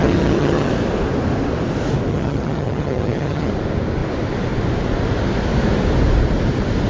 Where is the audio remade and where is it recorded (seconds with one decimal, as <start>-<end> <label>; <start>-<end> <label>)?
0.0-0.7 remade; 0.7-2.1 recorded; 2.1-3.5 remade; 3.5-6.9 recorded